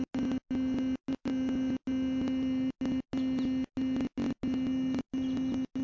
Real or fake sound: real